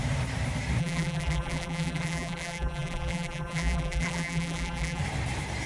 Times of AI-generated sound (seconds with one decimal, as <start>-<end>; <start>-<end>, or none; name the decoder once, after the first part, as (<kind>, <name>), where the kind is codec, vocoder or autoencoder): 0.8-5.0 (vocoder, BigVGAN v2)